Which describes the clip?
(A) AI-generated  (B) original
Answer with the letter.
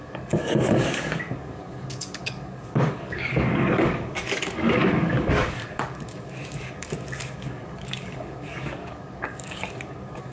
A